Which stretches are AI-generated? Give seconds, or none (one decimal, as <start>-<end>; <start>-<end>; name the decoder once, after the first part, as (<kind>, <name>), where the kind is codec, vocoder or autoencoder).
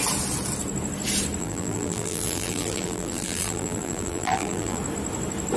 1.4-4.8 (vocoder, BigVGAN v2)